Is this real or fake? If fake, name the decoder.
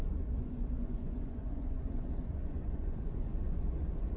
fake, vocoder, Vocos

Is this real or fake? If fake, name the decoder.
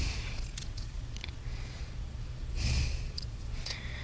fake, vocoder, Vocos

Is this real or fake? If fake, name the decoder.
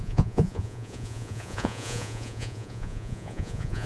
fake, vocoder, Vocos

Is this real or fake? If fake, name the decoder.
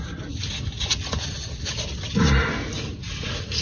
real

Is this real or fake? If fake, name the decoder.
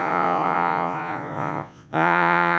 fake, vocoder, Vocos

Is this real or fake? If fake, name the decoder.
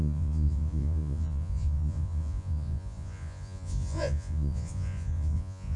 fake, vocoder, Vocos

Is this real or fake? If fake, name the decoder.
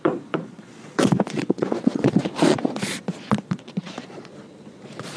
fake, vocoder, Vocos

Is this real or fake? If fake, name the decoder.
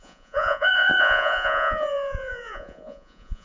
fake, vocoder, Vocos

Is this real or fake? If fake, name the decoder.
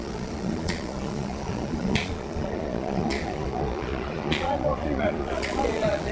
fake, vocoder, Vocos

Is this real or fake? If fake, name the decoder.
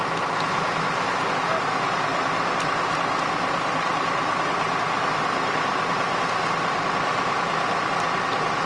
real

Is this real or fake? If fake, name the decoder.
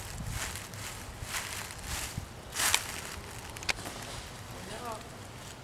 real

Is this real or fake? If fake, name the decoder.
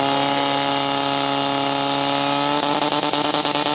real